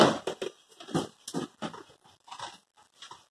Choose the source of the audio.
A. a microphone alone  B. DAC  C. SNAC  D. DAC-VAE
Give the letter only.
A